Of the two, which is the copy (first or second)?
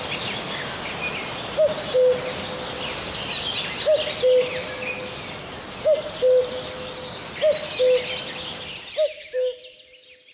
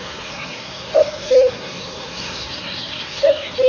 second